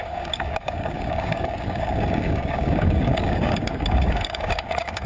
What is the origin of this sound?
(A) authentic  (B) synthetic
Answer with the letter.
B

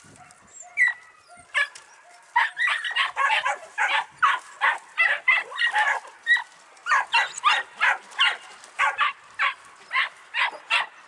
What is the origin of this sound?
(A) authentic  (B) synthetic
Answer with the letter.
A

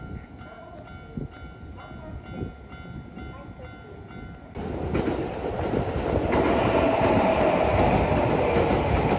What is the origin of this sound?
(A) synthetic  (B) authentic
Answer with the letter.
B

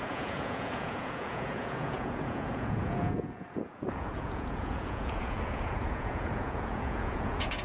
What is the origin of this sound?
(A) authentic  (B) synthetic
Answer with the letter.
B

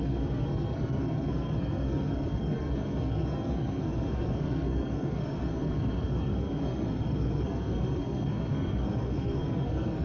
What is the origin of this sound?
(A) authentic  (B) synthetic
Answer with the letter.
B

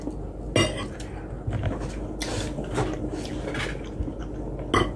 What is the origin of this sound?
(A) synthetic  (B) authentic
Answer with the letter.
B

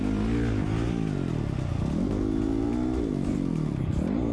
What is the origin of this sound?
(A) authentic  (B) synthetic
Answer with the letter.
A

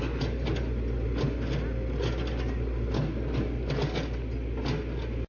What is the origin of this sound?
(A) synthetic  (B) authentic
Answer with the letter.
B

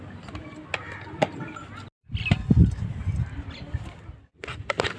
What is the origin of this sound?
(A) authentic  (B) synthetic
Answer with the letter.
A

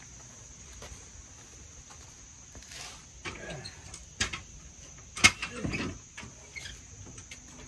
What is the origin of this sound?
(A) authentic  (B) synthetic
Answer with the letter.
A